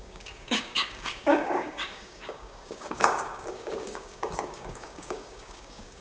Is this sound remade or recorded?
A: remade